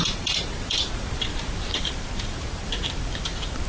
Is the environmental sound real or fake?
fake